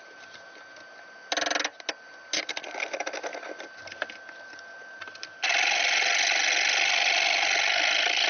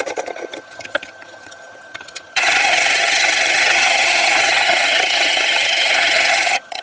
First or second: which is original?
first